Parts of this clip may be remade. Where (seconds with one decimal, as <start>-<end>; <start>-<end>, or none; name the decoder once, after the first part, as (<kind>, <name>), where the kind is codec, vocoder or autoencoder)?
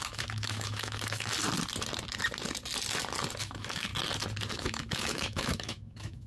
0.0-1.3 (autoencoder, DAC-VAE); 3.4-3.9; 4.5-6.3